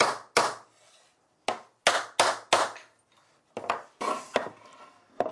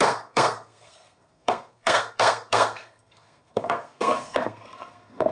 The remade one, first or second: second